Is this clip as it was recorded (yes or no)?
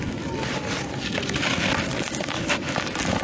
yes